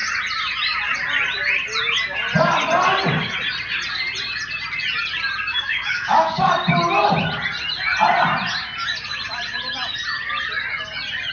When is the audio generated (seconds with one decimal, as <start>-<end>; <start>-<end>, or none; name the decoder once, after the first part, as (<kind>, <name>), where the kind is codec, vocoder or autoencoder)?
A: 5.5-6.5 (autoencoder, DAC-VAE)